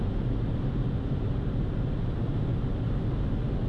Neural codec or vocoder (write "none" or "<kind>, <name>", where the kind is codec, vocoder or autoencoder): none